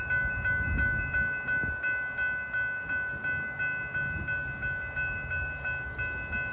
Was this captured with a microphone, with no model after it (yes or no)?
yes